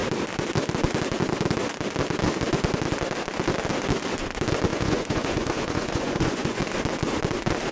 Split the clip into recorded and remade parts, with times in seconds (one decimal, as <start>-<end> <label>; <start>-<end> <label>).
0.0-4.7 recorded; 4.7-6.6 remade; 6.6-7.7 recorded